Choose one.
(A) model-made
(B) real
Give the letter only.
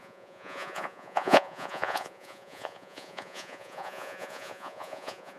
A